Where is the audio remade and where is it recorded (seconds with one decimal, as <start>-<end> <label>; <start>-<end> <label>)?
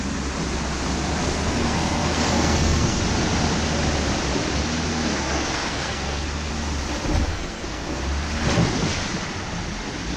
0.0-1.2 recorded; 1.2-3.0 remade; 3.0-4.9 recorded; 4.9-6.5 remade; 6.5-7.3 recorded; 7.3-8.0 remade; 8.0-10.2 recorded